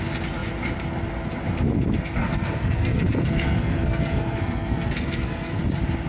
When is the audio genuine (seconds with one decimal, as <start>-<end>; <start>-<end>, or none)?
0.0-2.2; 5.6-6.1